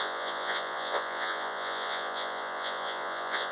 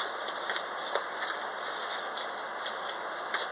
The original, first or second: second